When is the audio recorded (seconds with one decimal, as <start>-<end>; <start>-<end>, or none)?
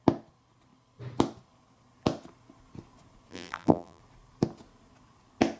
0.0-3.3; 4.0-5.6